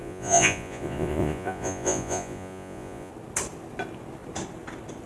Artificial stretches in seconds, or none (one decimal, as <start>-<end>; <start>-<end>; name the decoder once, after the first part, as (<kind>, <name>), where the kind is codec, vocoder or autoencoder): 0.0-3.1 (vocoder, Vocos)